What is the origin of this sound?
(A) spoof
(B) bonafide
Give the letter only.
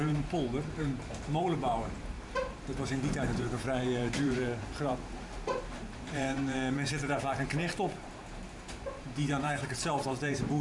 A